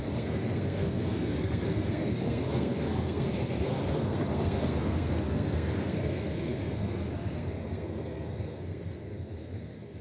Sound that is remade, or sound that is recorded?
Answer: remade